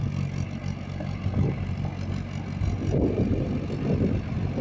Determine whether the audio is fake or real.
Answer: real